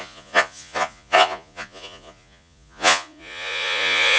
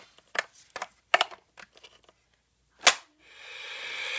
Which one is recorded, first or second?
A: second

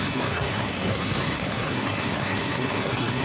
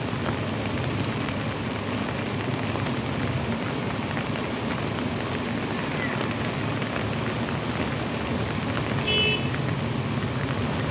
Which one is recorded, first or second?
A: second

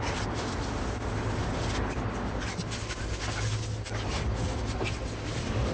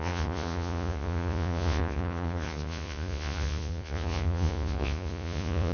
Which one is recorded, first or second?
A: first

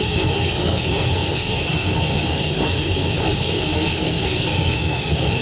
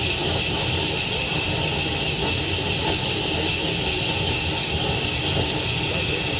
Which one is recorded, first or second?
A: second